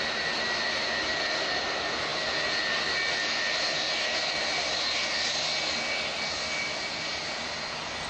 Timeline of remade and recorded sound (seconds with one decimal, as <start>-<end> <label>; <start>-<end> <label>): 0.0-8.1 recorded